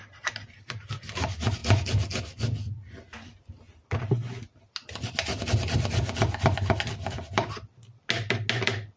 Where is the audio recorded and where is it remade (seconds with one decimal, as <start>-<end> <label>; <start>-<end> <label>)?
0.0-0.6 remade; 0.6-9.0 recorded